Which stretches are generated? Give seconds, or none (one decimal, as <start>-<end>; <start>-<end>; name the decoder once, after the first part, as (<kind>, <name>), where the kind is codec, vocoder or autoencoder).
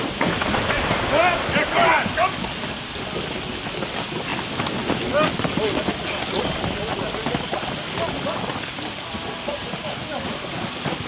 none